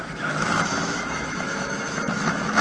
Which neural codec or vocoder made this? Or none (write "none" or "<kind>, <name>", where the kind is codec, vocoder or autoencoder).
autoencoder, DAC-VAE